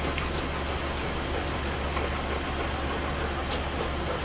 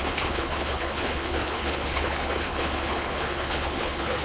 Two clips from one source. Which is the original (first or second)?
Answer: first